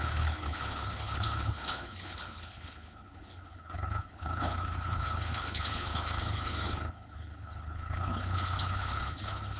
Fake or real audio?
fake